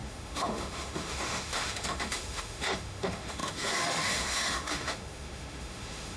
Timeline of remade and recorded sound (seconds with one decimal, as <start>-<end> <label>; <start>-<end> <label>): 0.0-6.2 remade